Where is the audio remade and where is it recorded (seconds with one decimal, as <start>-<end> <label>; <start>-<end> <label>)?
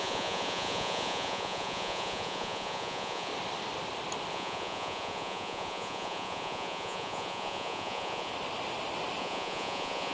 0.0-3.3 remade; 3.3-4.3 recorded; 4.3-8.3 remade; 8.3-9.2 recorded; 9.2-10.1 remade